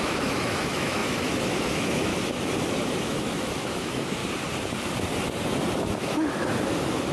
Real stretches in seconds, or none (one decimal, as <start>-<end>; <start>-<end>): 2.1-2.7; 4.2-5.7